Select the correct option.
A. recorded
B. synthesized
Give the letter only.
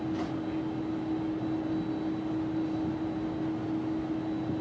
A